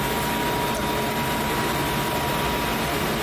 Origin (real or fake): real